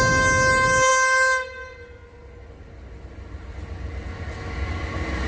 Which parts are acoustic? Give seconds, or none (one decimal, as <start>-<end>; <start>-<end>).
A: 0.0-5.3

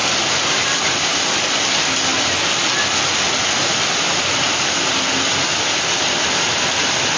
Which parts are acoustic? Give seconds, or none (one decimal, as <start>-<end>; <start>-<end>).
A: 0.0-7.2

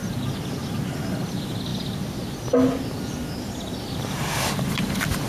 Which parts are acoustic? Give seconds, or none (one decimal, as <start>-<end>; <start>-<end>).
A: 0.0-5.3

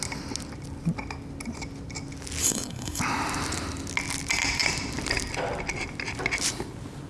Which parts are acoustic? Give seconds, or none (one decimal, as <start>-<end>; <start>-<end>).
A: 0.0-2.4; 3.0-7.1